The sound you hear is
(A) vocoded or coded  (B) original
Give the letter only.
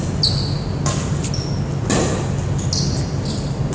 B